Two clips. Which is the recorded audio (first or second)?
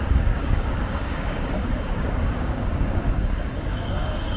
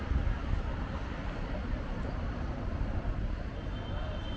second